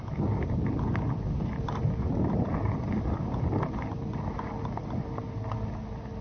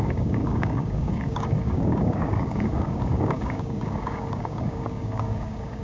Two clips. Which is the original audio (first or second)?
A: first